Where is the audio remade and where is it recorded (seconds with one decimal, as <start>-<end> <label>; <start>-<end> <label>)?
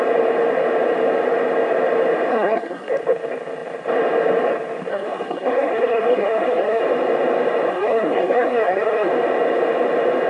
0.0-2.3 recorded; 2.3-2.9 remade; 2.9-4.9 recorded; 4.9-6.8 remade; 6.8-7.7 recorded; 7.7-9.1 remade; 9.1-10.3 recorded